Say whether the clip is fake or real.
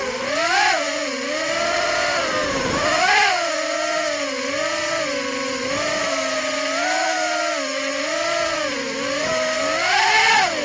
real